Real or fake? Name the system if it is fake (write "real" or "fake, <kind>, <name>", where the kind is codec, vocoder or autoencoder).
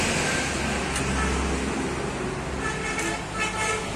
real